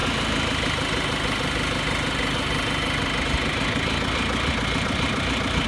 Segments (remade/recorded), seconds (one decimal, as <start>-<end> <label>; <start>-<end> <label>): 0.0-5.7 recorded